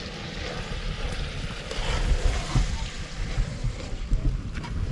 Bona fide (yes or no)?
yes